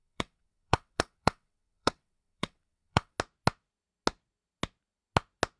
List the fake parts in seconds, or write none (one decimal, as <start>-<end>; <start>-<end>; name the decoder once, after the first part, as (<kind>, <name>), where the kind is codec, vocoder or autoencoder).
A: 0.0-3.2 (vocoder, WaveNeXt)